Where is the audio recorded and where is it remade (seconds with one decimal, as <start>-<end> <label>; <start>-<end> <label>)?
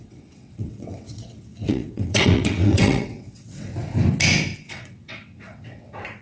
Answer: 0.0-3.7 remade; 3.7-4.6 recorded; 4.6-6.2 remade